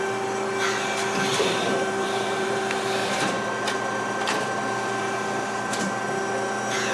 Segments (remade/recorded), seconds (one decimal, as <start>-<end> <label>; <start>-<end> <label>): 0.0-1.3 recorded; 1.3-2.6 remade; 2.6-6.9 recorded